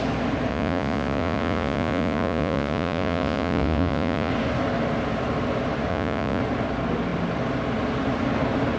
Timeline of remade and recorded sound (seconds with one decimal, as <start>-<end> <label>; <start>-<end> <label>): 0.0-0.5 recorded; 0.5-4.3 remade; 4.3-5.9 recorded; 5.9-6.4 remade; 6.4-8.8 recorded